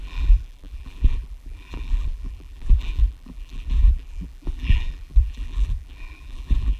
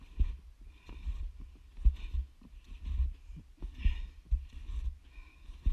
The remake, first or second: first